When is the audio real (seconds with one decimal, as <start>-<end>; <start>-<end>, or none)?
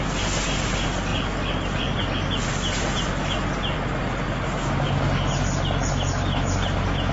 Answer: 0.0-7.1